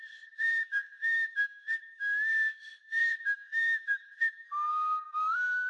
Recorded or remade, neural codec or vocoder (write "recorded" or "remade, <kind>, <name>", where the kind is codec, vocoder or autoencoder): remade, codec, SNAC